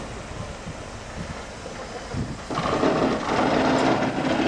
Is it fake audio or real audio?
real